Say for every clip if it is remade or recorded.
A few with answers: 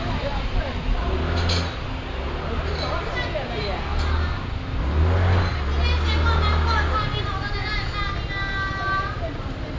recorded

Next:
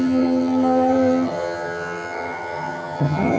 remade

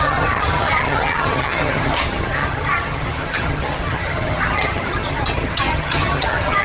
remade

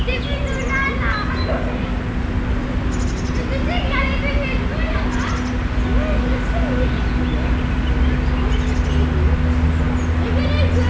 recorded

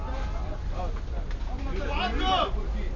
recorded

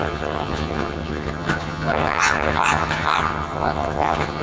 remade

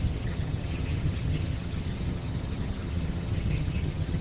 remade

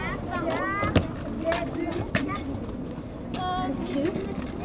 recorded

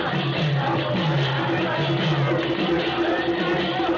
recorded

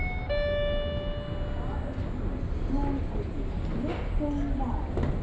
recorded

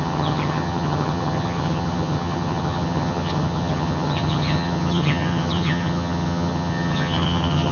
remade